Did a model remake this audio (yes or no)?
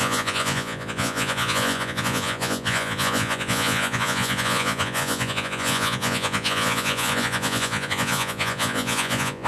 yes